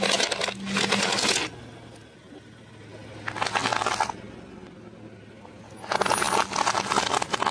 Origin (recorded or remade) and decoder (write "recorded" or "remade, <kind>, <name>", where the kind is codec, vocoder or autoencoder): recorded